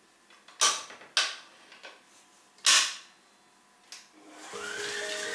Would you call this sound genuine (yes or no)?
yes